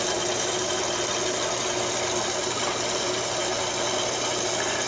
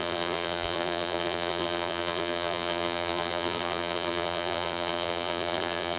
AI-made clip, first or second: second